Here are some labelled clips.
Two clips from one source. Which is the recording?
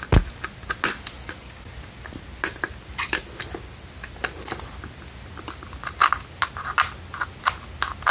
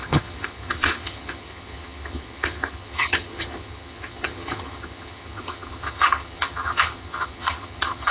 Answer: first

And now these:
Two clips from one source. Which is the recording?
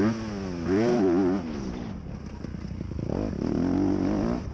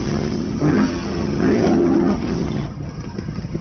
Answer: first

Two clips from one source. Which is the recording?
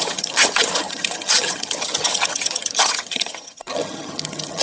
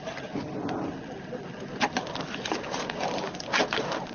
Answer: second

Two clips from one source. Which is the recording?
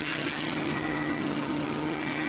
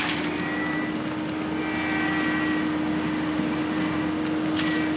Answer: second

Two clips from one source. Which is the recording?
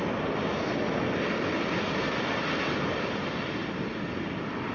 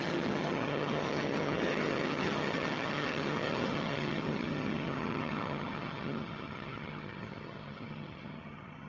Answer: first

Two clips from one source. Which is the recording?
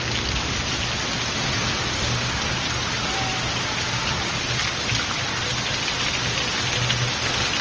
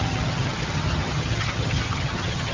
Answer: first